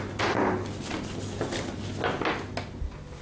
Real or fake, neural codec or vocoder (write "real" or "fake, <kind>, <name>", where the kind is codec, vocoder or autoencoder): real